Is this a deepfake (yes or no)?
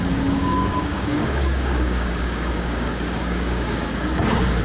yes